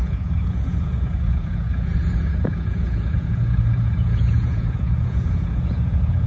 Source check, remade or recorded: remade